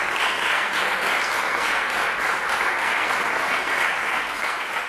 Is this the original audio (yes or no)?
no